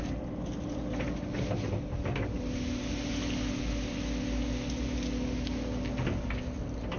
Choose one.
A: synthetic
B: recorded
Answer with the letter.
B